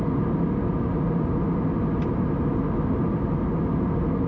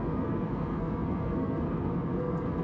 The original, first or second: first